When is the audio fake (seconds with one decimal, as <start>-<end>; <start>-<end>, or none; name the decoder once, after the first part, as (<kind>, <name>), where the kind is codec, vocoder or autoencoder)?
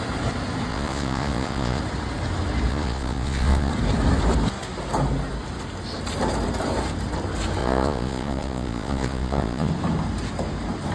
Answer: 0.7-1.8 (vocoder, Vocos); 2.7-3.7; 7.6-9.7